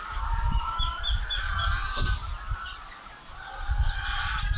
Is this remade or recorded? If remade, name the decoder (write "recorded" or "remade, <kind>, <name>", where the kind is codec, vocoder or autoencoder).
recorded